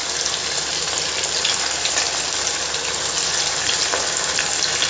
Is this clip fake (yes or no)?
no